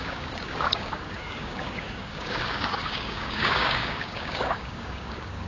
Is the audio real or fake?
fake